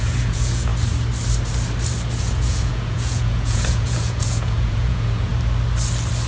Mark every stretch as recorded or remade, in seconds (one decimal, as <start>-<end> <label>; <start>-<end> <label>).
0.0-0.7 remade; 0.7-2.2 recorded; 2.2-5.3 remade; 5.3-6.3 recorded